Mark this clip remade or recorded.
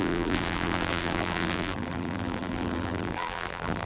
remade